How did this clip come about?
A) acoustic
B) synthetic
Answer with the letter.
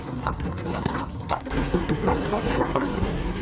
B